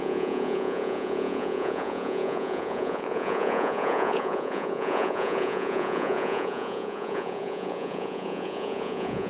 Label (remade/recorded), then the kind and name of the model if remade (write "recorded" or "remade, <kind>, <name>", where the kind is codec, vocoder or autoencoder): remade, vocoder, Vocos